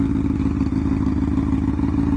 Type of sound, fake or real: real